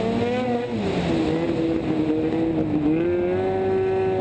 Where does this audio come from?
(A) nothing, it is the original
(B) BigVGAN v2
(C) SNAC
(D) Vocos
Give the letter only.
A